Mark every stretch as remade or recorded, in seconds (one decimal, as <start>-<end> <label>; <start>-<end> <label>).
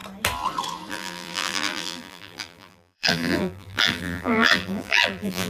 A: 0.0-0.9 recorded; 0.9-5.5 remade